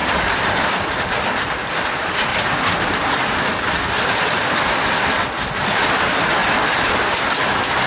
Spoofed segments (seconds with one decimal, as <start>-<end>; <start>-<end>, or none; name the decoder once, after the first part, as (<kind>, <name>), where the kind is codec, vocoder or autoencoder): 0.0-1.6 (vocoder, BigVGAN v2)